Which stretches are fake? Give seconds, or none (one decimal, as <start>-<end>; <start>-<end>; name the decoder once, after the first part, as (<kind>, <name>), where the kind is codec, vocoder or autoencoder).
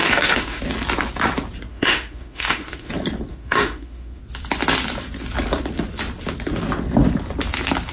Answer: 0.0-0.6 (autoencoder, DAC-VAE); 1.7-2.9; 3.3-4.2